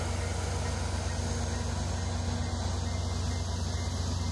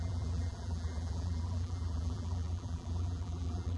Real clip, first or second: first